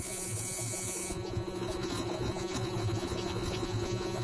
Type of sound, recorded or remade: remade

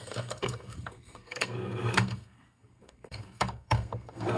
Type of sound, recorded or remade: remade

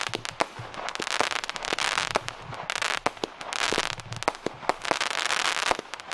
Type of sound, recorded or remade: recorded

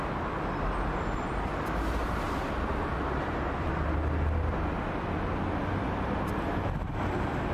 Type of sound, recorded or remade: recorded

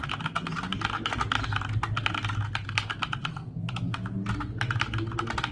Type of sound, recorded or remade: recorded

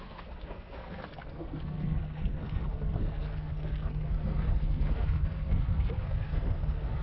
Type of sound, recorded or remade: remade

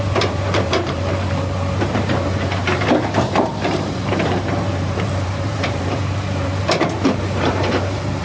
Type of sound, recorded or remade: remade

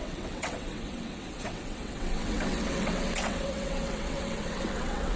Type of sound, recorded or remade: remade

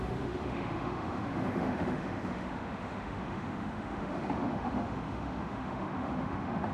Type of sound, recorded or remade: remade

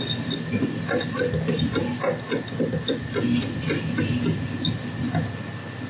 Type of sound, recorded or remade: recorded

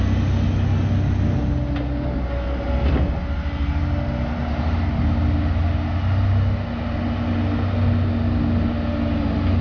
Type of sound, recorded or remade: recorded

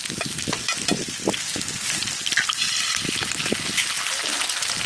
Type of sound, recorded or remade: recorded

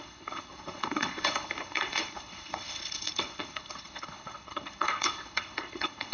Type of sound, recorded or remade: remade